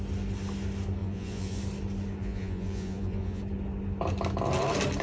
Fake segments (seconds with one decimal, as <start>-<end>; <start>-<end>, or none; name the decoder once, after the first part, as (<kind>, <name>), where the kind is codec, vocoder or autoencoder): 1.0-1.6 (vocoder, Vocos); 2.2-3.4